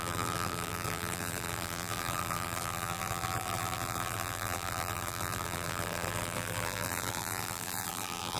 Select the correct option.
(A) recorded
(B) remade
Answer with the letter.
B